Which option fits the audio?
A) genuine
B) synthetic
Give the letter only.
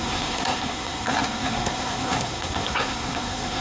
B